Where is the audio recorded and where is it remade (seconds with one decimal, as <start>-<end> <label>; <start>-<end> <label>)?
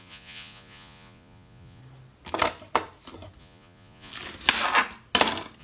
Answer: 0.0-1.8 remade; 1.8-3.4 recorded; 3.4-4.1 remade; 4.1-5.6 recorded